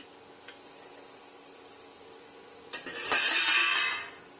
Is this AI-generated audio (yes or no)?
no